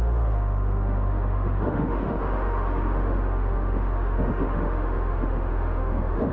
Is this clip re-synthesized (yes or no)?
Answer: yes